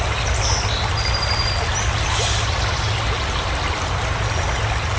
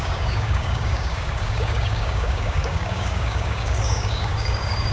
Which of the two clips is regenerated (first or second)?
second